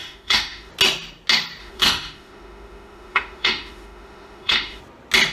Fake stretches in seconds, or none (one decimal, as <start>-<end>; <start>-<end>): 0.0-0.7; 1.6-4.8